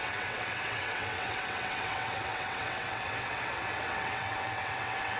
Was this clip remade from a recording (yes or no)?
yes